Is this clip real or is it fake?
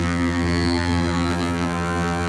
fake